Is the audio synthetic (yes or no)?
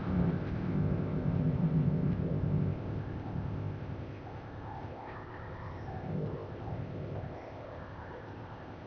yes